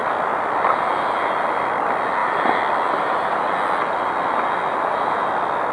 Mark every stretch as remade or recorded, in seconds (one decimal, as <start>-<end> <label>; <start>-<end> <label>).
0.0-1.8 remade; 1.8-2.2 recorded; 2.2-3.4 remade; 3.4-4.7 recorded; 4.7-5.3 remade; 5.3-5.7 recorded